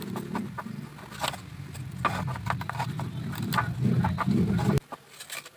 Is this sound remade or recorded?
recorded